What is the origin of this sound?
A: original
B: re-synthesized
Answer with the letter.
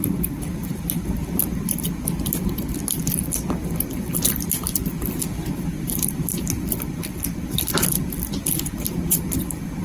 B